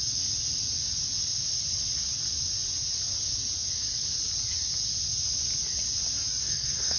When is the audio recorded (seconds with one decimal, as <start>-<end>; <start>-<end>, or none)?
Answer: 0.0-6.4